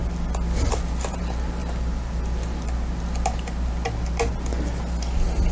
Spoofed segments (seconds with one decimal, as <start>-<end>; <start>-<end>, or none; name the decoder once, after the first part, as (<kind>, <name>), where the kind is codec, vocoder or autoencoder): none